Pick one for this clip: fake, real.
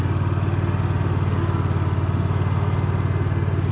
real